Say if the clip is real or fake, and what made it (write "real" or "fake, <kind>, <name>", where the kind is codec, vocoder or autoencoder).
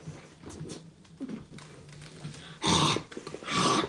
real